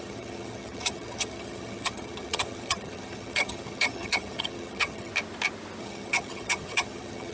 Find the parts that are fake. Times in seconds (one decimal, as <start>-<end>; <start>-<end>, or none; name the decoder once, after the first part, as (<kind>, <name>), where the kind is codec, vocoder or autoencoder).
0.0-5.1 (vocoder, HiFi-GAN); 5.8-7.3